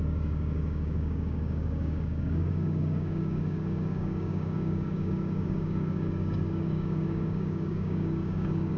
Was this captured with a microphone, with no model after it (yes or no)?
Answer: no